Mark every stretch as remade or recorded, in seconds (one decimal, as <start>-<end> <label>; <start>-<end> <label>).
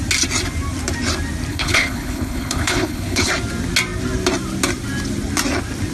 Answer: 0.0-1.5 recorded; 1.5-3.3 remade; 3.3-5.9 recorded